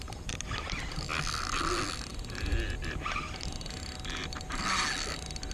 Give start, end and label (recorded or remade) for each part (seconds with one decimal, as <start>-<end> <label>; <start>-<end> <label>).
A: 0.0-5.5 recorded